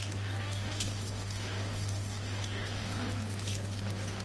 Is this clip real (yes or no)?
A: no